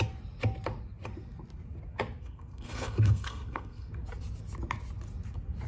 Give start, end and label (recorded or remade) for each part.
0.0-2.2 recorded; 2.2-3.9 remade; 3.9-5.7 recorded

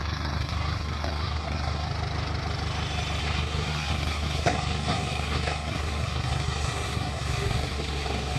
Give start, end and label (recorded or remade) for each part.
0.0-1.9 remade; 1.9-3.2 recorded; 3.2-8.4 remade

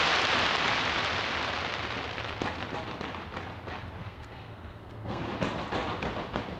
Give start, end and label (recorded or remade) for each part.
0.0-4.0 recorded; 4.0-5.2 remade; 5.2-6.6 recorded

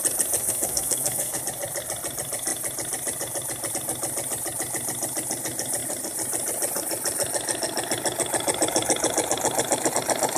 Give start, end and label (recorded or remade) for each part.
0.0-0.4 recorded; 0.4-1.4 remade; 1.4-10.4 recorded